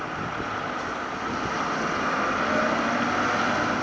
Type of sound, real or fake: real